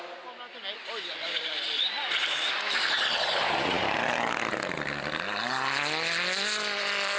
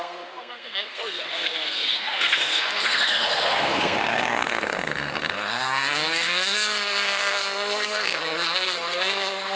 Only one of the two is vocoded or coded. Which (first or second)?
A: second